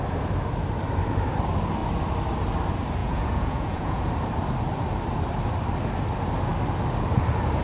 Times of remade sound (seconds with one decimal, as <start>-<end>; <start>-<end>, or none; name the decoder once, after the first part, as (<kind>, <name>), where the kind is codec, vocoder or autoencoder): 3.0-4.0 (vocoder, Vocos)